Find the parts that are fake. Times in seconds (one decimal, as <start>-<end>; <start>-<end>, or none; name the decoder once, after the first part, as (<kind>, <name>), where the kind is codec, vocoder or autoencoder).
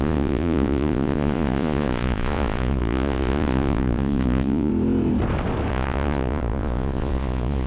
0.0-4.7 (vocoder, Vocos); 5.7-7.7